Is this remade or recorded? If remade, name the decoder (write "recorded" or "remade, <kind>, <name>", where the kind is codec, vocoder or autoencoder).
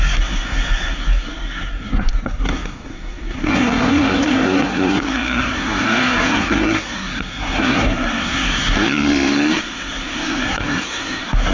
remade, codec, SNAC